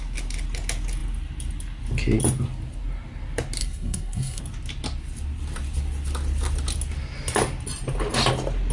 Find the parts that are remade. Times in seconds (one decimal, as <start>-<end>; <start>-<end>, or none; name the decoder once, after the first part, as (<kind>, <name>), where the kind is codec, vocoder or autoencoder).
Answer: 3.6-4.4 (codec, SNAC)